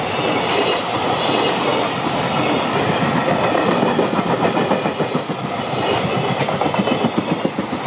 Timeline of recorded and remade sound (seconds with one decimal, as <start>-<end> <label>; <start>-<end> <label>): 0.0-7.9 recorded